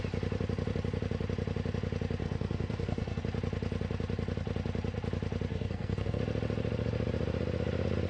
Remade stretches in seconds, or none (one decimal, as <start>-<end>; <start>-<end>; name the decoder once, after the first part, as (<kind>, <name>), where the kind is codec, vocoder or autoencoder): 2.2-3.2 (codec, SNAC); 5.5-6.2